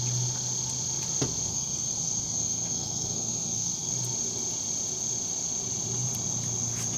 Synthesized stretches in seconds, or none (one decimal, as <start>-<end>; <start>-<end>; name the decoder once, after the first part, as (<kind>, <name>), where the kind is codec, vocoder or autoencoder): 1.5-3.9 (codec, SNAC)